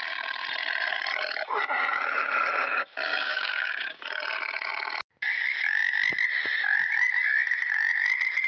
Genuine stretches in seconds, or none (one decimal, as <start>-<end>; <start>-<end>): 0.0-3.1; 4.0-8.5